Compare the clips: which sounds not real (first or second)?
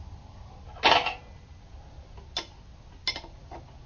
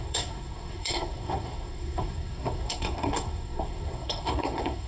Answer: second